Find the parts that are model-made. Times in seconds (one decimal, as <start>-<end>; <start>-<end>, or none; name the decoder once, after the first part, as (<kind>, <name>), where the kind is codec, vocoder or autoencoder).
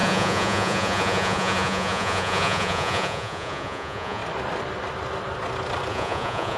0.0-4.2 (vocoder, Vocos); 5.9-6.6